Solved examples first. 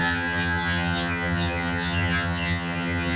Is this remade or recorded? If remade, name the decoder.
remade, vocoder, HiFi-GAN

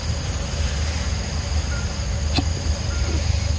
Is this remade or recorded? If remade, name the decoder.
recorded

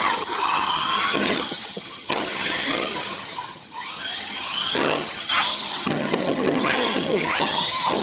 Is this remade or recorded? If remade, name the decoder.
remade, vocoder, HiFi-GAN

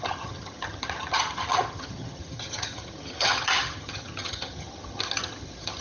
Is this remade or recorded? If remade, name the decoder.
remade, vocoder, HiFi-GAN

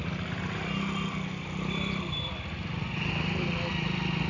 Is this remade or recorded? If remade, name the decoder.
recorded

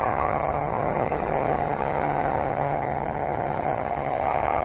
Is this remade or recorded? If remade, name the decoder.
remade, vocoder, HiFi-GAN